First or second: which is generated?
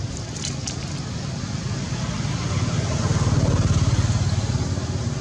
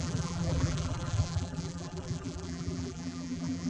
second